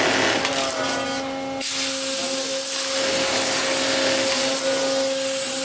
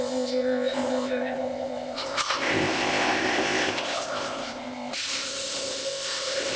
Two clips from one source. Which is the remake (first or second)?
second